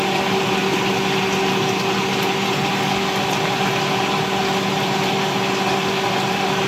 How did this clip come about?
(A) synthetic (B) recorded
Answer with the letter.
B